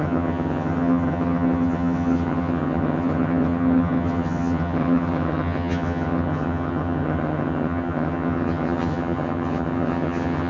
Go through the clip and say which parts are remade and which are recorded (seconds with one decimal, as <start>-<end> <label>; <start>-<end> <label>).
0.0-10.5 remade